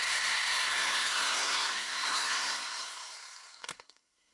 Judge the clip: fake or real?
fake